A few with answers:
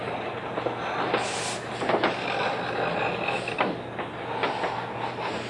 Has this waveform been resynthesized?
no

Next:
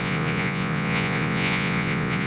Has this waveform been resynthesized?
yes